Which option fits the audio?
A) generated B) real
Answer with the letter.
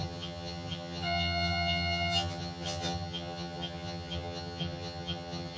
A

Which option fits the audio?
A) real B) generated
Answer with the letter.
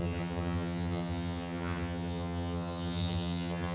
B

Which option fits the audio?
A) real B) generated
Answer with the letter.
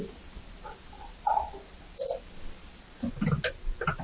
A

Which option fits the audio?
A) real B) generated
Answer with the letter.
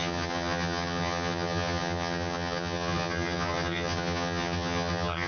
B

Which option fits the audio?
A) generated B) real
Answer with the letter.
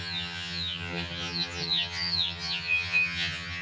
A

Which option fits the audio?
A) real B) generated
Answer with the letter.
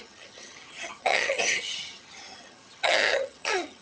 B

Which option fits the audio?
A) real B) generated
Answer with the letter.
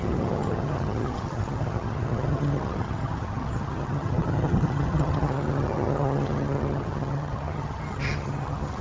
B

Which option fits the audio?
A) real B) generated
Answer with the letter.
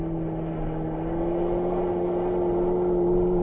A